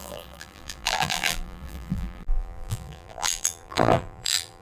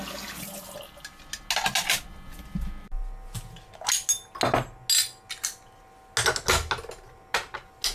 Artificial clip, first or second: first